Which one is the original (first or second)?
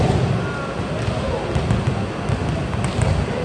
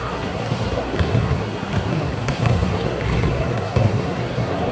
first